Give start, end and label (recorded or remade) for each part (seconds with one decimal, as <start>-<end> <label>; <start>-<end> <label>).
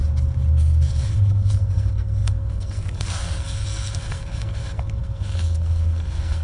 0.0-0.5 recorded; 0.5-6.4 remade